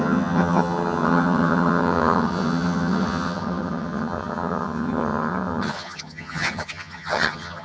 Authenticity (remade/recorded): remade